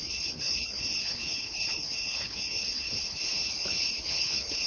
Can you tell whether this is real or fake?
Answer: fake